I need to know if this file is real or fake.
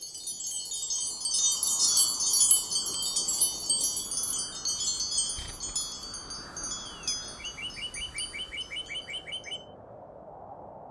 real